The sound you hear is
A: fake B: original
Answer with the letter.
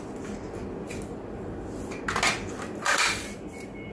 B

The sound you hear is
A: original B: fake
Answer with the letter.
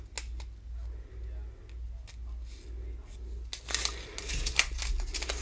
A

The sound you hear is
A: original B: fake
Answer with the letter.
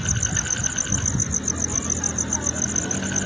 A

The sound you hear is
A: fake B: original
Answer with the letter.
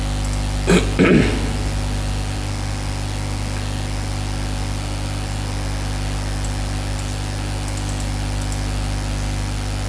B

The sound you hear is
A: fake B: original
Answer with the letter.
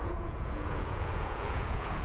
A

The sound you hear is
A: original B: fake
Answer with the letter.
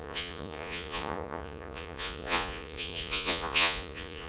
B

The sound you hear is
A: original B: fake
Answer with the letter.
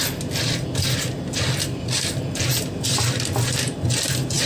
A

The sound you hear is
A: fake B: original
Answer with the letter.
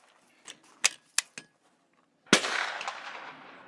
B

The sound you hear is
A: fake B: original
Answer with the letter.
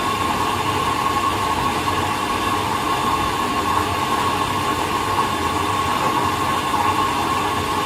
B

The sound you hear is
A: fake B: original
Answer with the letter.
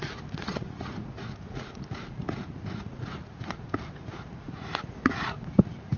A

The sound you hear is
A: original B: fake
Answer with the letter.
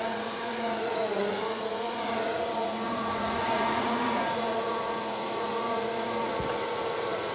B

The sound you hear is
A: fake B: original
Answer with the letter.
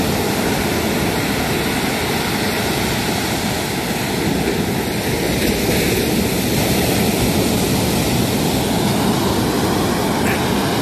B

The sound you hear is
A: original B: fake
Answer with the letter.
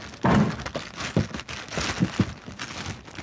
A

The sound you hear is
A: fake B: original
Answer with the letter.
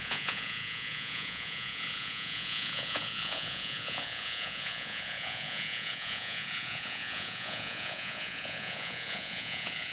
A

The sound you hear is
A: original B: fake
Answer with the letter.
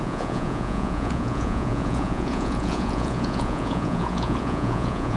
B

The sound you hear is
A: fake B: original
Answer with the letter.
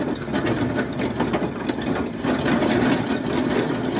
B